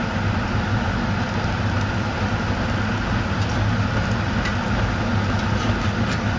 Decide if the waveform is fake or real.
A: real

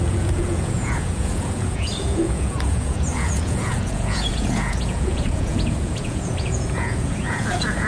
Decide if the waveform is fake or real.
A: fake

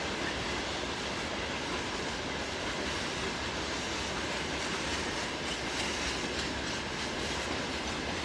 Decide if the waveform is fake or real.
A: real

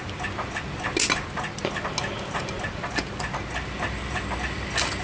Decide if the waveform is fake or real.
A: real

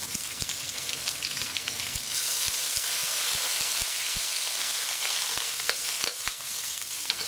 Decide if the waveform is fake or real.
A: fake